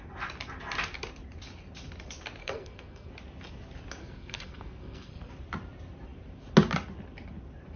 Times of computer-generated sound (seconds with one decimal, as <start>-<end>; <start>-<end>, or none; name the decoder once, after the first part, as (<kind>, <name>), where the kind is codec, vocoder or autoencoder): 2.4-3.1 (codec, SNAC); 4.0-5.3